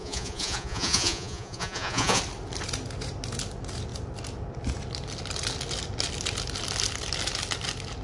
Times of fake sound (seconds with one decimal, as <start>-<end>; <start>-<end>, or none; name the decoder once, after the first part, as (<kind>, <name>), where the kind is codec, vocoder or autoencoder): 0.0-2.2 (vocoder, Vocos)